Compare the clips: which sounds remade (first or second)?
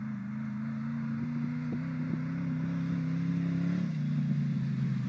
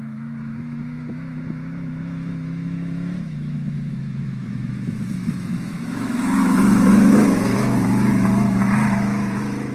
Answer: second